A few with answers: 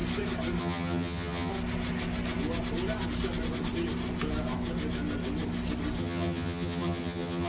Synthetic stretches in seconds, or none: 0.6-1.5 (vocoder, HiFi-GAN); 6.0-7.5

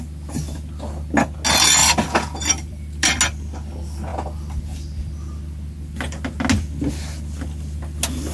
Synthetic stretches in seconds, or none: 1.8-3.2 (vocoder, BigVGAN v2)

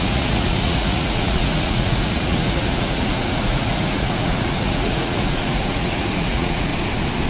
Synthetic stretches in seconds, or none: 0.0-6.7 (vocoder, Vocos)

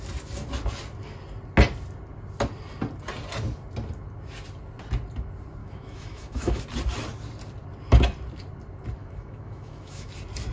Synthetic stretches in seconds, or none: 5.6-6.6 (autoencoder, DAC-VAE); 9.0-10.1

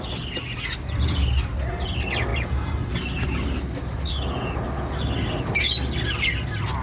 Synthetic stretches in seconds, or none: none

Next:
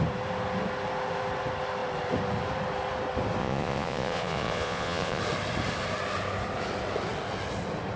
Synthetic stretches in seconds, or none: 3.4-5.2 (vocoder, Vocos)